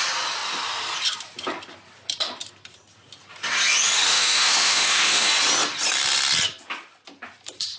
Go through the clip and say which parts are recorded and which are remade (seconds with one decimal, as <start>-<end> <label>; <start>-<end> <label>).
0.0-4.1 recorded; 4.1-5.3 remade; 5.3-7.8 recorded